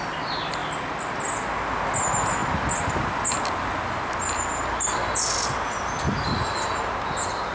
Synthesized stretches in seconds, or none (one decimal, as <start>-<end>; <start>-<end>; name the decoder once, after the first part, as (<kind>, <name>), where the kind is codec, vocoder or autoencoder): none